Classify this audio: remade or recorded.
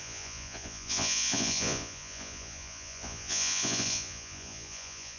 remade